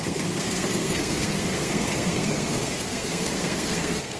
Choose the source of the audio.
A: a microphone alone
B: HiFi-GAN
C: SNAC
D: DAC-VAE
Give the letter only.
C